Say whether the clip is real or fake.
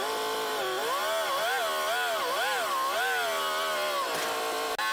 real